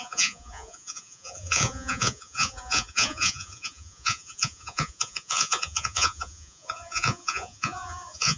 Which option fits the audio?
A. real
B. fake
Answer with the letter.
B